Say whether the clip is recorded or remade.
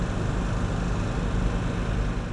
recorded